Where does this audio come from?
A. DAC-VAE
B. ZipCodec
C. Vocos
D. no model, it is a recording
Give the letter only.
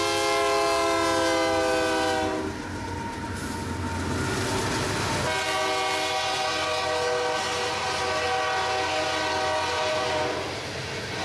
D